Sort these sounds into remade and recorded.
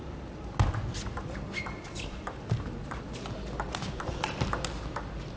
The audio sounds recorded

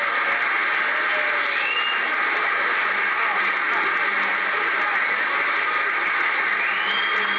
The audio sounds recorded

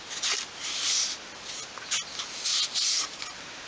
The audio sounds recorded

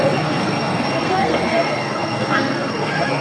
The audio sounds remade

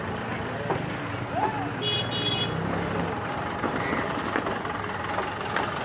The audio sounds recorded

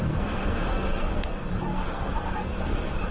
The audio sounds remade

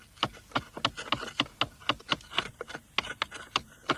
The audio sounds recorded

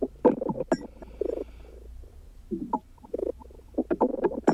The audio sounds recorded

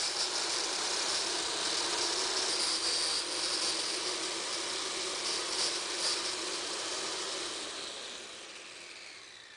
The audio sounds recorded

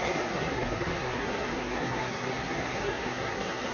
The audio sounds remade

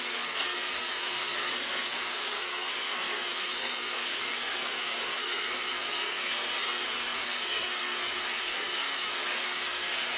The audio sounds remade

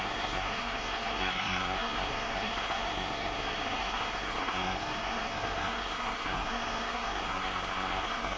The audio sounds remade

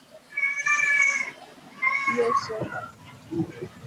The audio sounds recorded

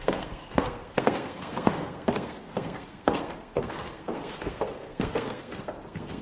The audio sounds remade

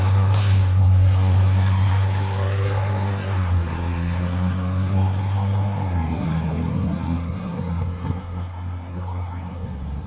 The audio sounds remade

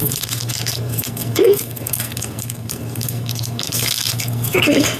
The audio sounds remade